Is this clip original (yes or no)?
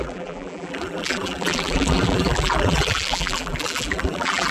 no